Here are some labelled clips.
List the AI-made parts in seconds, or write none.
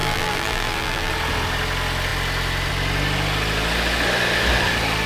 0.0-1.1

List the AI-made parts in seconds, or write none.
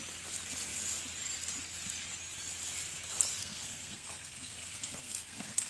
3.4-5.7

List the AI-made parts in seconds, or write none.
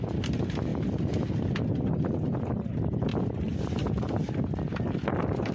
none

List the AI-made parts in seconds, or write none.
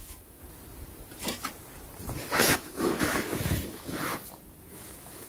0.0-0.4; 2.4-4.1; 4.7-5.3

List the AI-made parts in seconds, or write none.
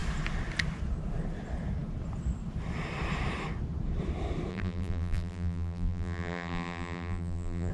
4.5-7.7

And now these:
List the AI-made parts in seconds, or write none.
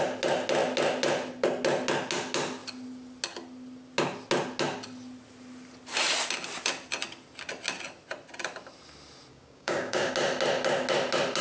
9.3-10.1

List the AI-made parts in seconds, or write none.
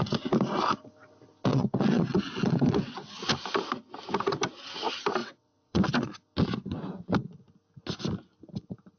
1.5-3.1; 5.2-5.9